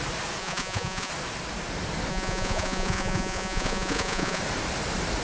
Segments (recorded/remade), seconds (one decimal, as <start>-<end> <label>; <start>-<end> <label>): 0.0-0.4 recorded; 0.4-1.1 remade; 1.1-2.1 recorded; 2.1-4.4 remade; 4.4-5.2 recorded